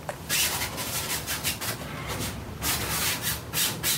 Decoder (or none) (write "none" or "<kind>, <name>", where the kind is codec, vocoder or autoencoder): vocoder, BigVGAN v2